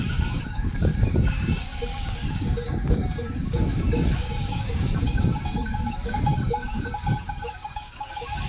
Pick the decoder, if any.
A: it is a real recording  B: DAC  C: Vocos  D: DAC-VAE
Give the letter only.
B